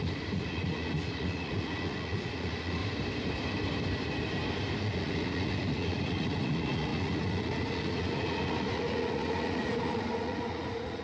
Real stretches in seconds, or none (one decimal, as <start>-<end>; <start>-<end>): 2.8-4.8